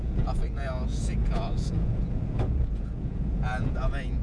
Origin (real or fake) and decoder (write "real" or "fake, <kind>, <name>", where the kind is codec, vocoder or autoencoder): fake, vocoder, Vocos